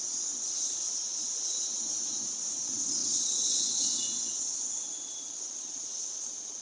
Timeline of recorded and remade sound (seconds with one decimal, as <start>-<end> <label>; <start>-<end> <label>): 0.0-6.6 remade